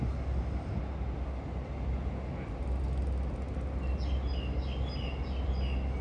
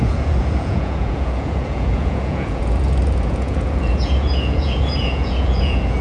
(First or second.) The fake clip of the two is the second